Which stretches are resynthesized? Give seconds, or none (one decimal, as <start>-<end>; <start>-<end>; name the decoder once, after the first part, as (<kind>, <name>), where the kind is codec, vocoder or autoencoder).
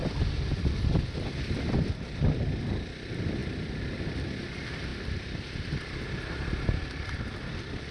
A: 1.5-7.9 (vocoder, BigVGAN v2)